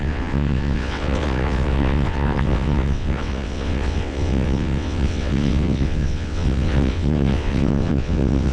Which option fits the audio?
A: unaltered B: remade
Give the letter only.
B